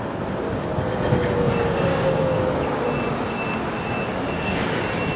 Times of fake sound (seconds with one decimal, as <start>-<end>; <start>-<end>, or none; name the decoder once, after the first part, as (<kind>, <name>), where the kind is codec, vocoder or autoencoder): 1.9-2.8 (codec, DAC); 4.1-4.8